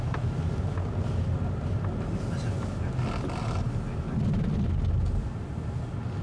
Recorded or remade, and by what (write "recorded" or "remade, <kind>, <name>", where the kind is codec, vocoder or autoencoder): recorded